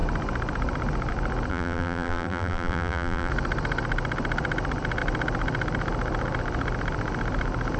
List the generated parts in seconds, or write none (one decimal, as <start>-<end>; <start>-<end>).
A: 1.5-3.3